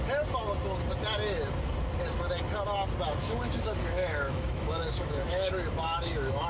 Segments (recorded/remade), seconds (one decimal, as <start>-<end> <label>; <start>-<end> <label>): 0.0-3.2 recorded; 3.2-6.5 remade